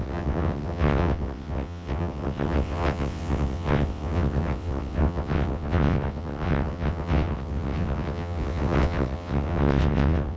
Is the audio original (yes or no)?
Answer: no